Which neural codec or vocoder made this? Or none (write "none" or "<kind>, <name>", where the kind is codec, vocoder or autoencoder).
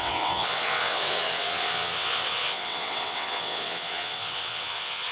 vocoder, WaveNeXt